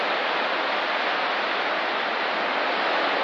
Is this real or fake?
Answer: real